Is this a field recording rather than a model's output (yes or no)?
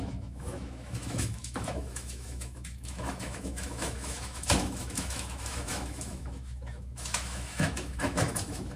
no